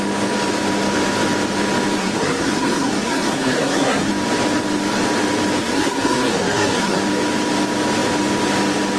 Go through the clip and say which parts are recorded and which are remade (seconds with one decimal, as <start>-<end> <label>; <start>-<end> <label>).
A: 0.0-2.0 recorded; 2.0-4.1 remade; 4.1-5.6 recorded; 5.6-7.0 remade; 7.0-9.0 recorded